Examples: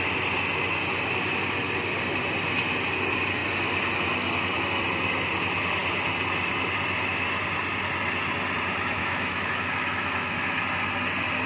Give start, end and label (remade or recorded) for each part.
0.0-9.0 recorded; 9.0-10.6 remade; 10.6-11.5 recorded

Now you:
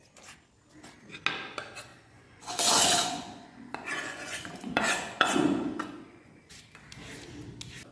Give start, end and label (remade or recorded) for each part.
0.0-1.9 recorded; 1.9-6.6 remade; 6.6-7.9 recorded

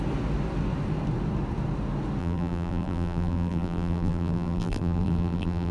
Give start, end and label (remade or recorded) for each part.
0.0-2.2 recorded; 2.2-5.7 remade

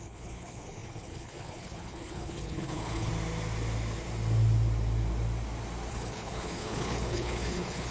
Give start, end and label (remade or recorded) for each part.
0.0-3.1 remade; 3.1-5.9 recorded; 5.9-7.9 remade

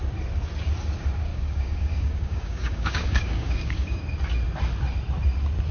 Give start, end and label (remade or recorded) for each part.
0.0-1.3 recorded; 1.3-4.0 remade; 4.0-5.7 recorded

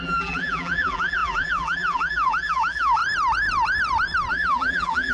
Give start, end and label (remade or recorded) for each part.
0.0-3.0 remade; 3.0-4.3 recorded; 4.3-5.1 remade